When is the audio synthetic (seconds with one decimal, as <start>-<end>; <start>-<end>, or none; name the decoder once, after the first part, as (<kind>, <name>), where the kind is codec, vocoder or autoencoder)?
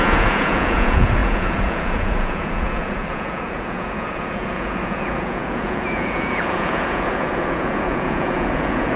0.0-9.0 (vocoder, Vocos)